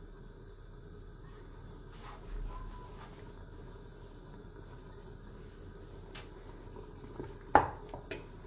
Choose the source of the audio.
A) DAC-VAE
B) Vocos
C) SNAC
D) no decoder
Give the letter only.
D